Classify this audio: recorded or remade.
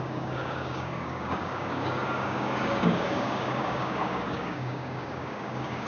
remade